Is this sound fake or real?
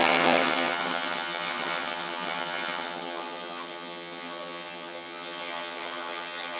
fake